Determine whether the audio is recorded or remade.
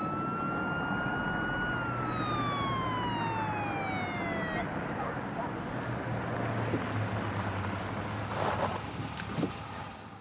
recorded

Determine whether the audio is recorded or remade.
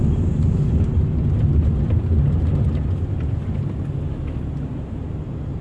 recorded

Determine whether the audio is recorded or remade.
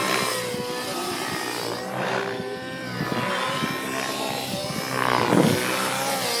recorded